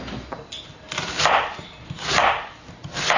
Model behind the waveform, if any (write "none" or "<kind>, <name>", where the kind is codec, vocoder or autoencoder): none